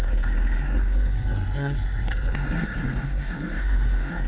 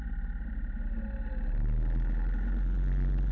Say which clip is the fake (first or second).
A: first